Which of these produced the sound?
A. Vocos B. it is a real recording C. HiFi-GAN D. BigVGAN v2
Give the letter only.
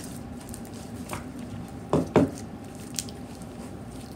D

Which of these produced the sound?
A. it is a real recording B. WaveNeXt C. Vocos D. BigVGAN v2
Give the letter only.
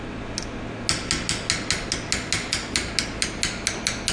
A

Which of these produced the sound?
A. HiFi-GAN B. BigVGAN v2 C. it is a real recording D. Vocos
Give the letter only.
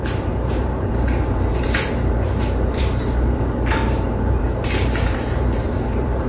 B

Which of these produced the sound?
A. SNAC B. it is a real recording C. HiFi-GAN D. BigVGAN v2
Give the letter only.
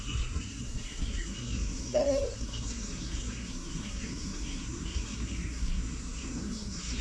A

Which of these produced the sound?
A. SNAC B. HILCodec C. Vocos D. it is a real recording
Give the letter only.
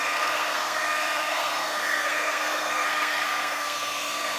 A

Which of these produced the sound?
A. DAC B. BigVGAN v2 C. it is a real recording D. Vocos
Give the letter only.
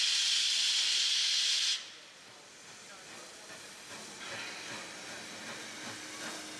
C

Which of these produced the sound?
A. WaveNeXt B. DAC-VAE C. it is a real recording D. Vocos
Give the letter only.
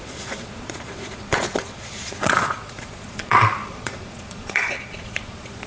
D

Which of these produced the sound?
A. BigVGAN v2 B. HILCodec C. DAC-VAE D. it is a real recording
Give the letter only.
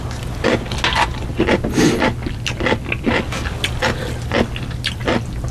D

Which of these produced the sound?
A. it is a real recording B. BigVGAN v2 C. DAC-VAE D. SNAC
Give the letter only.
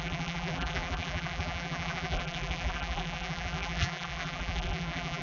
B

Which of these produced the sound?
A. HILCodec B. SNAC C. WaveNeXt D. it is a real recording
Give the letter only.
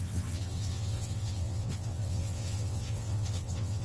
C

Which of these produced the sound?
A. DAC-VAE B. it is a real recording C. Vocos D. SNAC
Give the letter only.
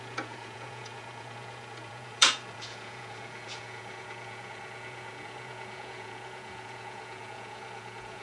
C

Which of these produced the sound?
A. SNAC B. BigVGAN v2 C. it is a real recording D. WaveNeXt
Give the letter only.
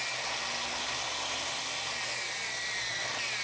C